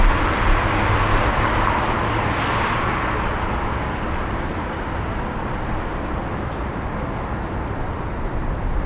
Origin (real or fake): real